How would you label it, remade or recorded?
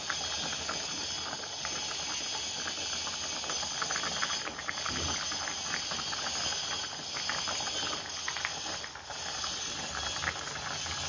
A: recorded